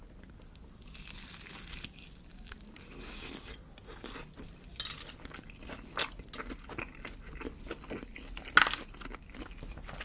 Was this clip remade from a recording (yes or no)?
no